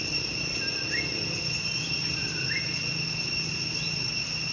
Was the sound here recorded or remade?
recorded